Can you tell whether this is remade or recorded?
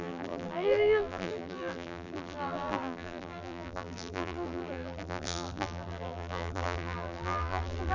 remade